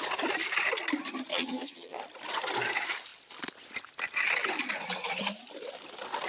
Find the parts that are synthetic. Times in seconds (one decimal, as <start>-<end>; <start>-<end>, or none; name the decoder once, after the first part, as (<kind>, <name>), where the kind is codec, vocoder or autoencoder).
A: 1.3-2.0 (vocoder, HiFi-GAN)